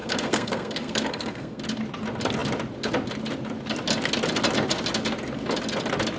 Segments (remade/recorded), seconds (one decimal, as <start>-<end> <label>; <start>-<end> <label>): 0.0-1.6 remade; 1.6-6.2 recorded